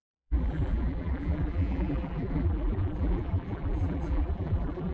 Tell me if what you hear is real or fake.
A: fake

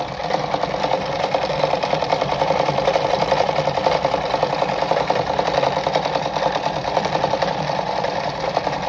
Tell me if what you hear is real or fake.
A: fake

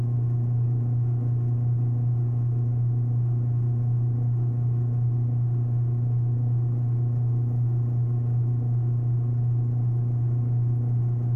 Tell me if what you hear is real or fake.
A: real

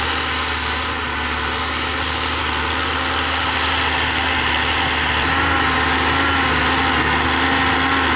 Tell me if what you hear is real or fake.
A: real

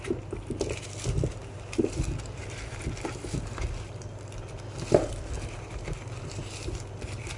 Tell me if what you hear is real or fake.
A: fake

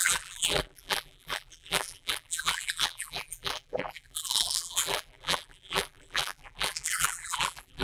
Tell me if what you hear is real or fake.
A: fake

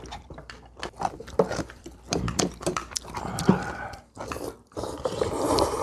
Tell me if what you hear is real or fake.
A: fake